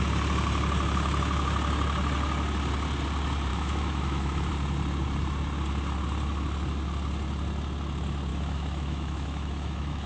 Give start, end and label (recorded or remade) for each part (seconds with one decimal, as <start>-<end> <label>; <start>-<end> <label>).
0.0-3.5 recorded; 3.5-4.5 remade; 4.5-8.3 recorded; 8.3-10.1 remade